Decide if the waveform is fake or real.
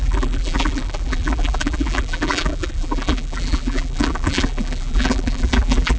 fake